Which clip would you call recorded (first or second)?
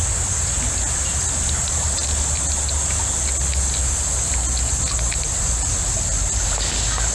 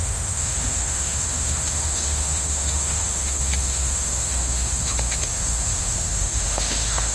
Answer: first